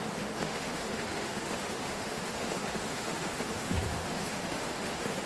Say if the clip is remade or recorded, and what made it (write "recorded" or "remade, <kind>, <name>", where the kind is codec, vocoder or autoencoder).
remade, autoencoder, DAC-VAE